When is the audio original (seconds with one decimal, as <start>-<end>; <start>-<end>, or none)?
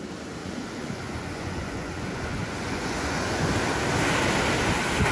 0.0-0.4; 3.5-5.1